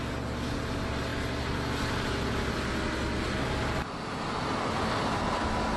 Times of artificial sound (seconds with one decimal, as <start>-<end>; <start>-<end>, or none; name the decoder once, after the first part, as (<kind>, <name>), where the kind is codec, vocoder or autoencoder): none